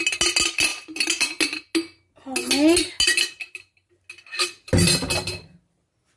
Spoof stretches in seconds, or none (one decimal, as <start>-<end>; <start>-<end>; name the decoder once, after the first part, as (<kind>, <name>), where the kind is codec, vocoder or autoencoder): none